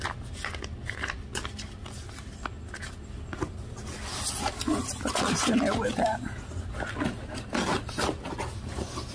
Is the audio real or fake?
real